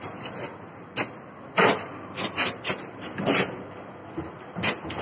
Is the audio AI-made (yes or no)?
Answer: no